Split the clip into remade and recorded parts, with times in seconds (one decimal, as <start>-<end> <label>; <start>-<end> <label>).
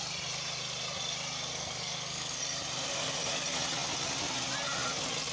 0.0-1.5 recorded; 1.5-2.4 remade; 2.4-5.3 recorded